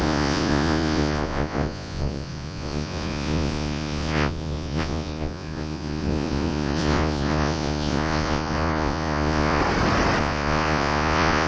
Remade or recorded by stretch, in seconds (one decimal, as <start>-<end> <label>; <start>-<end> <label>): 0.0-9.6 remade; 9.6-10.2 recorded; 10.2-11.5 remade